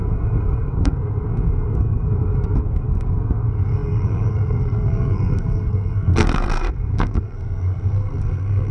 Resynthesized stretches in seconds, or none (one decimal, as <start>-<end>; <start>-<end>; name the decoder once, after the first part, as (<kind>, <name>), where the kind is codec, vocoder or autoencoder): 0.0-8.7 (codec, SNAC)